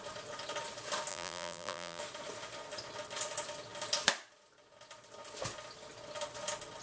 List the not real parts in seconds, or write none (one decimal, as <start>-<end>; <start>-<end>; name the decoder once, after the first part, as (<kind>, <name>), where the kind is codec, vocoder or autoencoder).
1.1-2.0 (vocoder, BigVGAN v2)